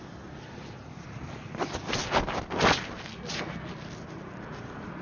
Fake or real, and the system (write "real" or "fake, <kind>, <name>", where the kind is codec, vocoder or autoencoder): real